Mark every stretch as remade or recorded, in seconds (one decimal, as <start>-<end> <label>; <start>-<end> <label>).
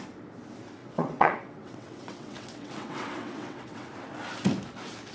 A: 0.0-0.8 recorded; 0.8-3.9 remade; 3.9-5.1 recorded